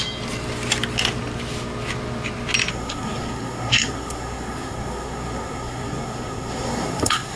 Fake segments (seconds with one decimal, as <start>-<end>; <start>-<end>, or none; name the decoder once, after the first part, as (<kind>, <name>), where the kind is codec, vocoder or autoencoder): 2.7-7.4 (codec, SNAC)